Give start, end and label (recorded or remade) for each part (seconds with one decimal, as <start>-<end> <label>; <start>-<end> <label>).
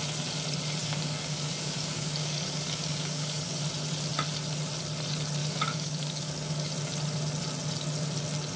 0.0-0.8 recorded; 0.8-3.6 remade; 3.6-5.4 recorded; 5.4-6.7 remade; 6.7-8.6 recorded